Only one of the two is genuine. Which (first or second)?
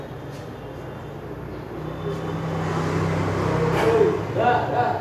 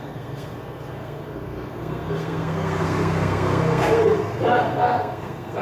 first